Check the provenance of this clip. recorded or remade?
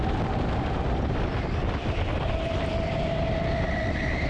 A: remade